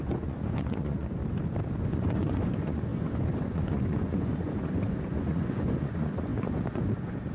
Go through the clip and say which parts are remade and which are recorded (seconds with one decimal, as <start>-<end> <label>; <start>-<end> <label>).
0.0-1.2 remade; 1.2-1.8 recorded; 1.8-7.3 remade